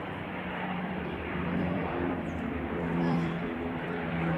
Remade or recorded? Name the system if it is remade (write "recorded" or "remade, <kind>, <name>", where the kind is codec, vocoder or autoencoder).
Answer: remade, vocoder, BigVGAN v2